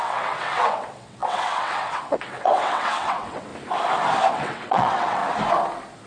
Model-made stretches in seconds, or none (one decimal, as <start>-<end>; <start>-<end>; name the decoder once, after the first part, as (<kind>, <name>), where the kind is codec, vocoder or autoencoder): 0.0-3.5 (vocoder, WaveNeXt); 4.3-5.2